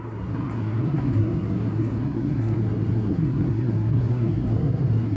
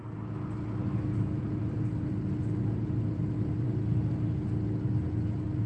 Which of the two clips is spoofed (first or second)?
first